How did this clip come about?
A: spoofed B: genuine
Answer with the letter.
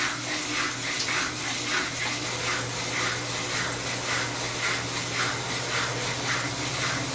B